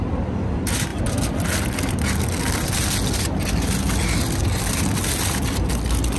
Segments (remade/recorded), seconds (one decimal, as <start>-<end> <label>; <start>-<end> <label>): 0.0-6.2 recorded